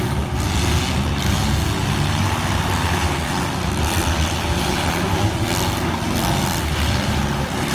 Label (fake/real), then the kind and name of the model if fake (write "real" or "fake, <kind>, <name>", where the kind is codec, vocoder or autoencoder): real